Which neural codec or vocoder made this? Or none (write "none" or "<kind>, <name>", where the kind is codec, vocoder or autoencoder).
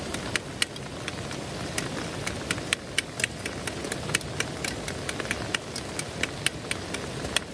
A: none